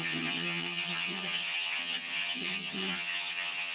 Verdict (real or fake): fake